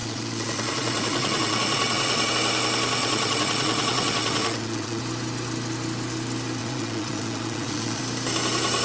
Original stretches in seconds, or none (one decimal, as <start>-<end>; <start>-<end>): 2.3-3.0; 5.0-6.6; 8.0-8.8